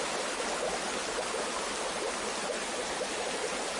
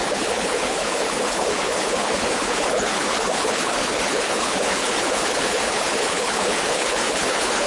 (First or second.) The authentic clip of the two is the first